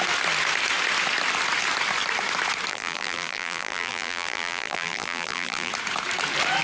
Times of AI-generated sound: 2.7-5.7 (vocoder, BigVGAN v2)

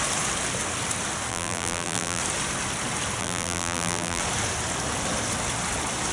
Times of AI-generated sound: 1.3-2.2 (vocoder, BigVGAN v2); 3.2-4.2

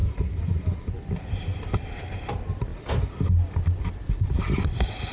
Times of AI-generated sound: 1.2-2.7 (vocoder, BigVGAN v2); 3.8-5.1